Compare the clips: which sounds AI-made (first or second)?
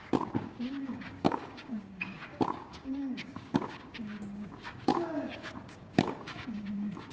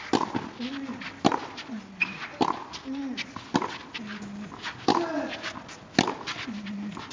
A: first